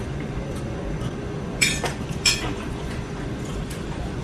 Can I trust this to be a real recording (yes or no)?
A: no